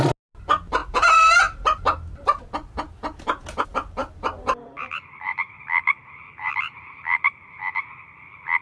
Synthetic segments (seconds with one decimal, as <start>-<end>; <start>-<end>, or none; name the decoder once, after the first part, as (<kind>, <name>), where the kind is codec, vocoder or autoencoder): 0.8-2.1 (vocoder, BigVGAN v2); 4.0-7.6